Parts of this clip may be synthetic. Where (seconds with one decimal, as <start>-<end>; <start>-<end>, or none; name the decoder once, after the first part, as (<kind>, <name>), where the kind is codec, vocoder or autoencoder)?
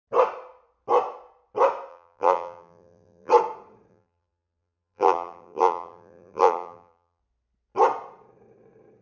1.9-3.3 (vocoder, BigVGAN v2); 3.9-7.2